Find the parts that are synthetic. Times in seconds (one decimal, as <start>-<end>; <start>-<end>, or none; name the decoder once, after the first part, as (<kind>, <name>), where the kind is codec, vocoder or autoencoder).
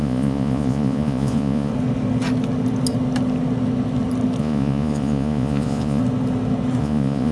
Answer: 0.0-1.7 (vocoder, Vocos); 4.4-6.0; 6.8-7.3